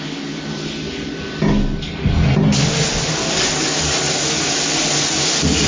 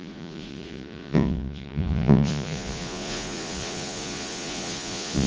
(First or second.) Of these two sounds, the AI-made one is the second